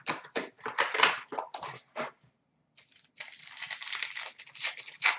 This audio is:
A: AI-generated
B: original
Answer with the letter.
B